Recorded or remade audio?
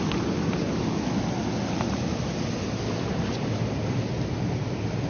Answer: recorded